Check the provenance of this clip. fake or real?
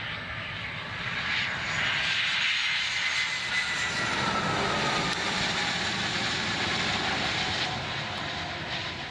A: real